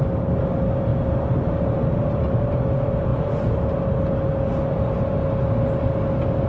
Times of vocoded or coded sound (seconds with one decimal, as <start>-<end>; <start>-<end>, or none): none